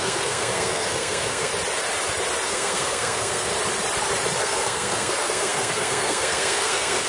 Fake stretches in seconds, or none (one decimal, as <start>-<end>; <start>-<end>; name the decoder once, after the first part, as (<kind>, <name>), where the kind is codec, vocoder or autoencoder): 0.0-1.5 (codec, SNAC); 2.5-3.5; 4.4-7.1